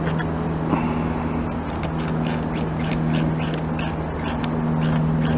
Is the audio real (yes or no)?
yes